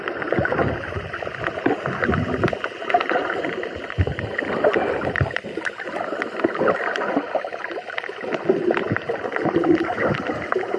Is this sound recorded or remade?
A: recorded